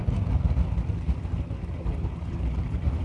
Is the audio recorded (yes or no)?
yes